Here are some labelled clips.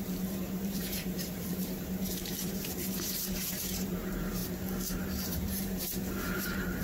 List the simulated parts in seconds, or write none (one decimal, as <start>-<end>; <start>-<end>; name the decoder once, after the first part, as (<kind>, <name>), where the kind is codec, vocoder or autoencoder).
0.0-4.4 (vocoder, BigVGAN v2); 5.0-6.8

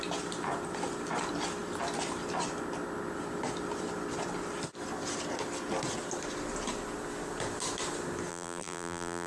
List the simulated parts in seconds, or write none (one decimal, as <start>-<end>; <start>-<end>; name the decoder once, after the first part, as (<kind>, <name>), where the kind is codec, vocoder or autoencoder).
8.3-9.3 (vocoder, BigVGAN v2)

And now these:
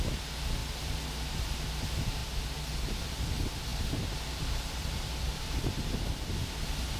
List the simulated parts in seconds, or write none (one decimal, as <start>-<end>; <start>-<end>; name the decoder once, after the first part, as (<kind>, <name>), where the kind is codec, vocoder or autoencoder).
0.0-0.6 (vocoder, BigVGAN v2); 1.3-2.2; 3.0-7.0

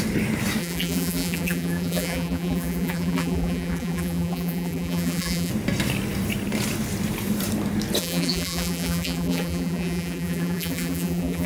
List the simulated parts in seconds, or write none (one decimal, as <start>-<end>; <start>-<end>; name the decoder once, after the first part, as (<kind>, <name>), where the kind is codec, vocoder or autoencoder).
0.6-5.5 (vocoder, BigVGAN v2); 8.0-11.5

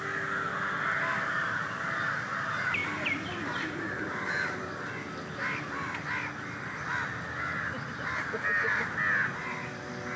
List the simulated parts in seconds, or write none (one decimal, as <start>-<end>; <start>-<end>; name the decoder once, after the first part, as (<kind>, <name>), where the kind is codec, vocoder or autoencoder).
2.8-4.6 (vocoder, BigVGAN v2)